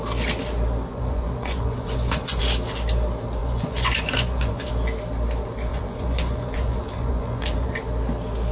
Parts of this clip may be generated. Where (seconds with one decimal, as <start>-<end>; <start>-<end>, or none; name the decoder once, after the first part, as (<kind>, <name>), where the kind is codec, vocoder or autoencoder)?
0.9-2.4 (vocoder, Vocos); 3.4-4.7; 5.7-7.7